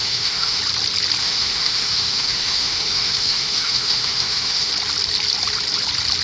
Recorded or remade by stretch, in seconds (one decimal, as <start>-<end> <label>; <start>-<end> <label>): 0.0-0.6 remade; 0.6-1.2 recorded; 1.2-4.7 remade; 4.7-6.2 recorded